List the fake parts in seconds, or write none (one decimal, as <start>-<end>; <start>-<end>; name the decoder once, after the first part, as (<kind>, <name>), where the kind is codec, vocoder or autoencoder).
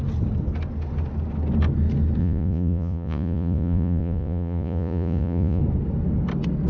2.2-5.6 (vocoder, Vocos)